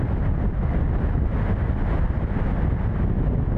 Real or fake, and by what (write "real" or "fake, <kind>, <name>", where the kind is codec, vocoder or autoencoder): real